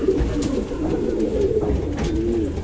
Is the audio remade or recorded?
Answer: recorded